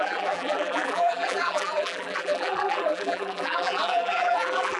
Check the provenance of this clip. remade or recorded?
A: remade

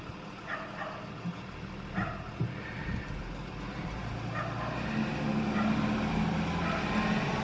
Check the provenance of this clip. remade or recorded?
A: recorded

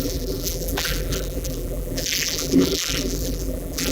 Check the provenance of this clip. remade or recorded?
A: remade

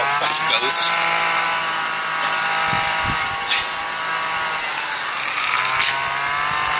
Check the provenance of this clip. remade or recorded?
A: recorded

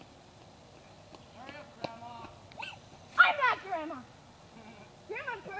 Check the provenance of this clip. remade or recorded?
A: recorded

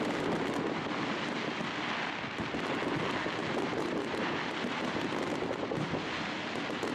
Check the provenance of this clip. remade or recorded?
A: recorded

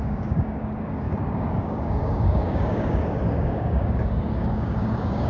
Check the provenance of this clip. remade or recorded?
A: remade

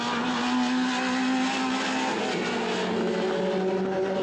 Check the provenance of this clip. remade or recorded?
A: recorded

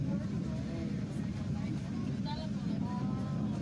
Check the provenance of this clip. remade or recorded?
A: recorded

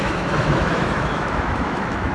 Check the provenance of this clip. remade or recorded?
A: remade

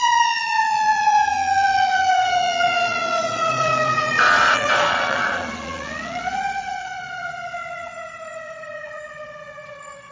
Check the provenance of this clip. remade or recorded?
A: remade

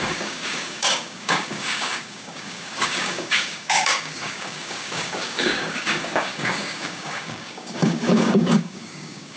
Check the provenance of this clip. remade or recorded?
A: remade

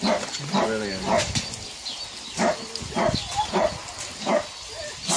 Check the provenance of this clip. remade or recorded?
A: recorded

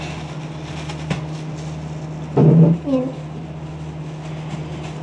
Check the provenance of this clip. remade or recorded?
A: recorded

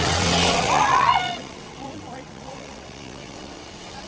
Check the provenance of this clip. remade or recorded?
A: remade